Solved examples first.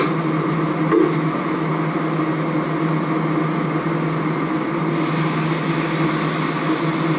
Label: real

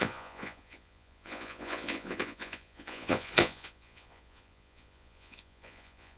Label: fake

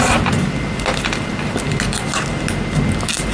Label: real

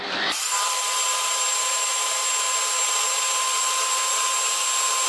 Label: real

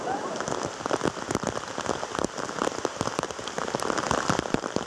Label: real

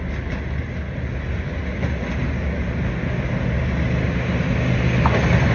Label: real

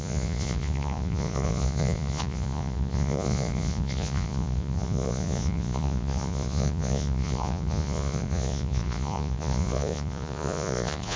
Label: fake